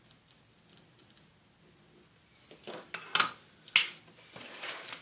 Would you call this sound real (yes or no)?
yes